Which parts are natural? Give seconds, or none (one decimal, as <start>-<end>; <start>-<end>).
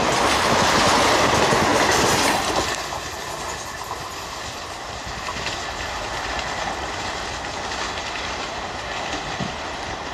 0.0-10.1